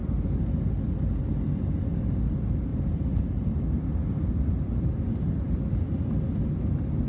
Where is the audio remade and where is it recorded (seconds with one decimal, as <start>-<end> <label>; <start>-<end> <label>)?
0.0-2.7 recorded; 2.7-5.4 remade; 5.4-7.1 recorded